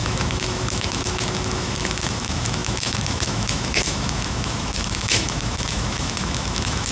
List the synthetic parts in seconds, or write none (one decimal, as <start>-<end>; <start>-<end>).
0.0-6.9